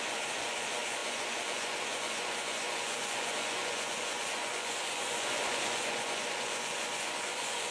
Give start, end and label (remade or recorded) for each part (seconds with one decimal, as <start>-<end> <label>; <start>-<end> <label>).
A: 0.0-7.7 remade